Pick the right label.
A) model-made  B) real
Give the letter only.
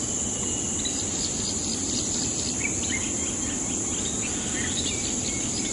B